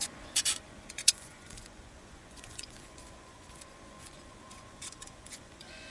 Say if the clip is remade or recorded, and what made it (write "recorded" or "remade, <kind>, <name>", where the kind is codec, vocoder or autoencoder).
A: remade, vocoder, Vocos